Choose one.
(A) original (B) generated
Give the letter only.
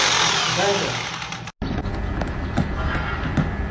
A